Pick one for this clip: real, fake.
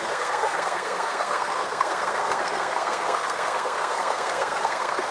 fake